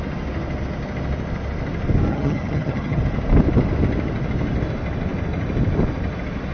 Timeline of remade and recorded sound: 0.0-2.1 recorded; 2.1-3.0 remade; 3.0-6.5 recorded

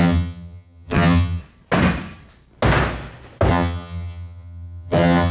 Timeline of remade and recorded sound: 0.0-1.4 remade; 1.4-3.5 recorded; 3.5-5.3 remade

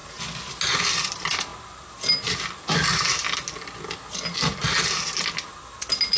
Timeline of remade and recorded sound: 0.0-6.2 recorded

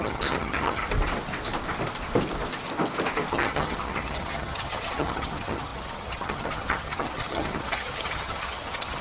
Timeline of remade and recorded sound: 0.0-0.8 remade; 0.8-3.3 recorded; 3.3-9.0 remade

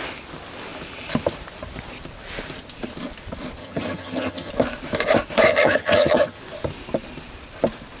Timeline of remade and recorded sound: 0.0-3.6 recorded; 3.6-4.5 remade; 4.5-5.5 recorded; 5.5-6.4 remade; 6.4-8.0 recorded

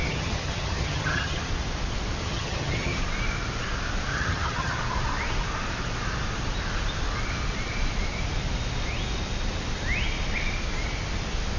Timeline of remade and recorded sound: 0.0-1.5 remade; 1.5-2.2 recorded; 2.2-3.0 remade; 3.0-4.1 recorded; 4.1-4.8 remade; 4.8-11.6 recorded